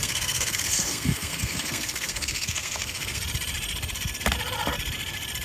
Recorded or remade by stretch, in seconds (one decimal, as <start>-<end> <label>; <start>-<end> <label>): 0.0-3.2 remade; 3.2-5.4 recorded